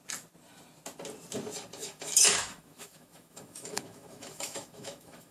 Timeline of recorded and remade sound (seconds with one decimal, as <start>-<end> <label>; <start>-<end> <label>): 0.0-1.8 recorded; 1.8-5.3 remade